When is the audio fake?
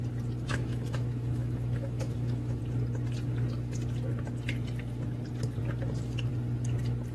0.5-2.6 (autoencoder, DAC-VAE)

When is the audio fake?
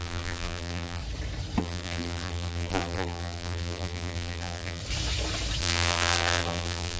0.0-1.0 (vocoder, BigVGAN v2); 1.6-4.8; 5.6-7.0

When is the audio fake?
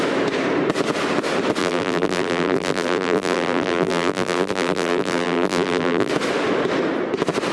1.6-6.1 (vocoder, BigVGAN v2)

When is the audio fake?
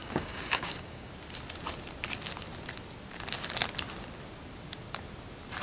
0.0-1.1 (codec, DAC)